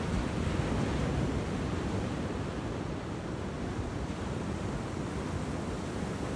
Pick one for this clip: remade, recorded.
remade